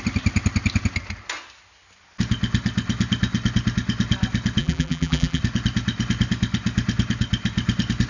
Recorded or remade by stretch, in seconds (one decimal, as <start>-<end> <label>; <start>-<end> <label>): 0.0-4.6 recorded; 4.6-5.4 remade; 5.4-8.1 recorded